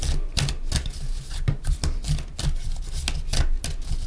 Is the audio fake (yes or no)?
no